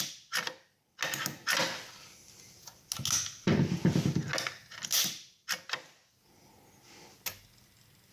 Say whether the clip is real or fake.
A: real